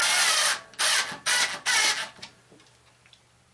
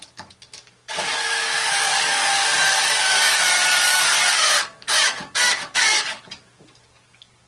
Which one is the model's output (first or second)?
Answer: second